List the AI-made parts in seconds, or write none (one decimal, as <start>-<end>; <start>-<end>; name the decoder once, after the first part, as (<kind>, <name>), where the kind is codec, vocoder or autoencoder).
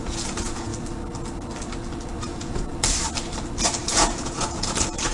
0.0-0.7 (vocoder, Vocos); 2.2-2.7; 3.8-5.1